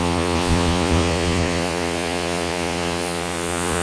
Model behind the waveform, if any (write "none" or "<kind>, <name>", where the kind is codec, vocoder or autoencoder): vocoder, Vocos